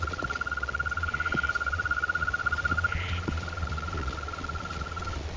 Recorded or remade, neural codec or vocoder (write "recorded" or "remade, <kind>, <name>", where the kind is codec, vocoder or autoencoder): remade, vocoder, Vocos